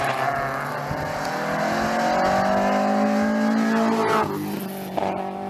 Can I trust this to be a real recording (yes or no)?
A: yes